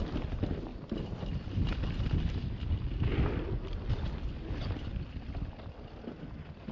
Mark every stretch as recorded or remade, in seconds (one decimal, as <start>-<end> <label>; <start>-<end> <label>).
0.0-6.7 recorded